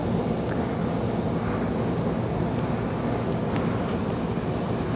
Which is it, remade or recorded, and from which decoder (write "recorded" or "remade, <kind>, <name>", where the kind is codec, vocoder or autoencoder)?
recorded